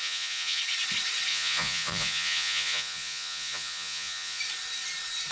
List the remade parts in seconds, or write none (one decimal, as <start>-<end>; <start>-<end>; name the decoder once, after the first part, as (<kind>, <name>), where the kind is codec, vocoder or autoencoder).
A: 0.0-0.6 (vocoder, Vocos); 1.3-4.4